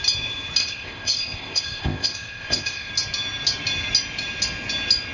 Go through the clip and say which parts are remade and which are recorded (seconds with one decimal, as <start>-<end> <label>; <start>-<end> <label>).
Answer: 0.0-0.6 recorded; 0.6-2.9 remade; 2.9-5.1 recorded